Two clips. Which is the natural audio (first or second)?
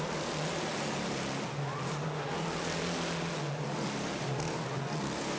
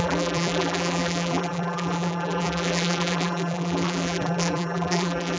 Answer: first